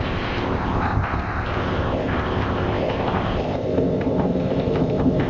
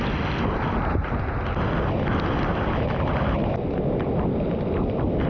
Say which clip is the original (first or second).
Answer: second